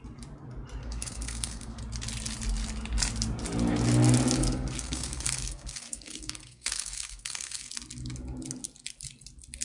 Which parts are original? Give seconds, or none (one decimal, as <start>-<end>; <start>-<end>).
0.0-0.8; 1.8-4.4; 7.7-9.6